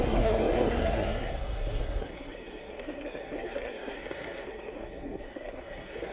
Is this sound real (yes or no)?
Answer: no